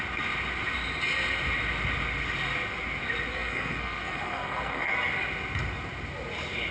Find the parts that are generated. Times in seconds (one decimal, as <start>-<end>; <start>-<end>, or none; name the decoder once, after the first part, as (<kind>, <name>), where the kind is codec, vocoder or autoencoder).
3.3-4.9 (codec, SNAC)